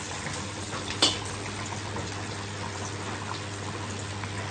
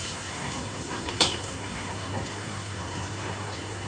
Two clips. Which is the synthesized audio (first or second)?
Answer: second